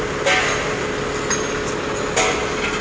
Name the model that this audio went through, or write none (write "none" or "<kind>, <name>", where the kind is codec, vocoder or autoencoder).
none